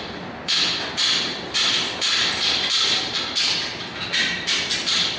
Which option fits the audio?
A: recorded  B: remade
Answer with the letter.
B